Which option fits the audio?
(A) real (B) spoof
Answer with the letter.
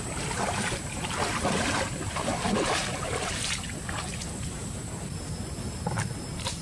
B